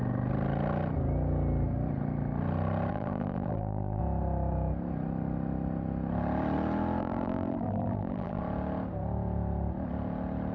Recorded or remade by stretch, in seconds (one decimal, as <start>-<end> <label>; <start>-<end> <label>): 0.0-2.9 recorded; 2.9-4.0 remade; 4.0-7.0 recorded; 7.0-8.4 remade; 8.4-10.5 recorded